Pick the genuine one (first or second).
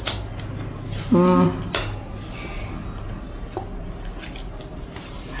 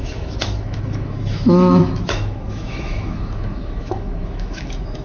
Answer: first